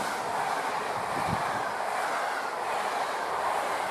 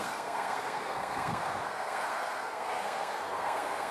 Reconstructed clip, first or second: second